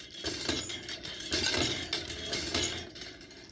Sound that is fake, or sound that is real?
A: real